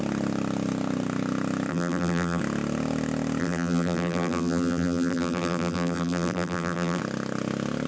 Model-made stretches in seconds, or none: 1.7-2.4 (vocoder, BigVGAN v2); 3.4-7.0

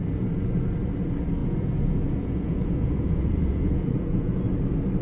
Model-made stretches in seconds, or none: 1.4-4.4 (vocoder, Vocos)

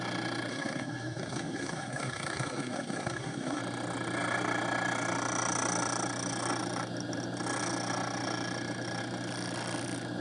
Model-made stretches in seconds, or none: 0.5-3.6 (codec, SNAC)

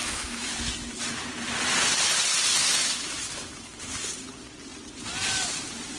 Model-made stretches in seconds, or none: 0.0-0.5 (autoencoder, DAC-VAE); 2.5-4.1